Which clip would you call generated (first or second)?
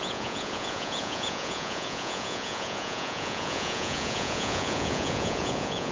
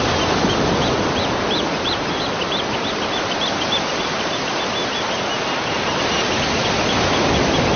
first